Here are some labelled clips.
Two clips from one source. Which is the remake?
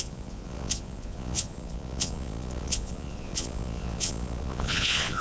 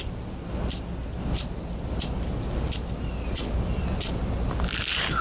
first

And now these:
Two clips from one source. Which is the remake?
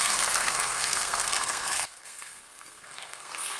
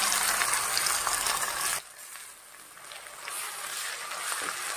first